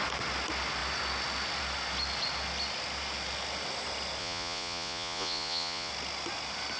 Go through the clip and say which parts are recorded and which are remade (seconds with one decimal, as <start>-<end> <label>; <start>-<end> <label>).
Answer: 0.0-4.2 recorded; 4.2-5.9 remade; 5.9-6.8 recorded